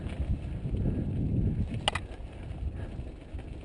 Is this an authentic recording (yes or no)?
yes